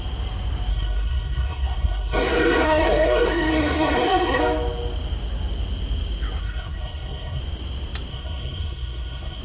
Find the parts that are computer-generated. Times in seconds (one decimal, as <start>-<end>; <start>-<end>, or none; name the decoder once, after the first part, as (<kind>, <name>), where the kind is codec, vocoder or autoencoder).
0.7-4.4 (codec, SNAC); 6.4-7.4; 8.1-9.4